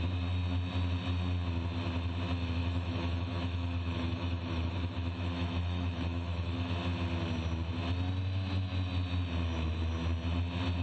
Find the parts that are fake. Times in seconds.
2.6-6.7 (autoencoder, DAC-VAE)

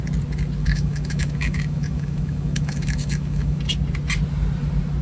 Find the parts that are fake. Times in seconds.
0.6-3.6 (autoencoder, DAC-VAE)

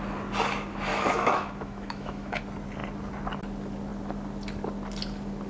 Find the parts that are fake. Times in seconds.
0.9-2.4 (autoencoder, DAC-VAE)

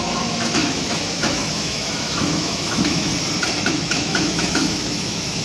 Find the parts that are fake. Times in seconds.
0.0-3.1 (autoencoder, DAC-VAE); 3.7-5.4

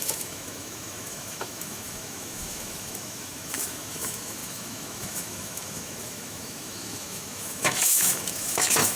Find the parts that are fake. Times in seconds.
0.0-9.0 (autoencoder, DAC-VAE)